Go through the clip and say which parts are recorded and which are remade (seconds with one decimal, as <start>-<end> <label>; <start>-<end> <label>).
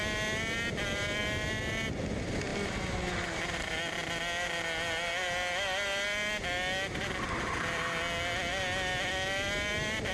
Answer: 0.0-10.1 recorded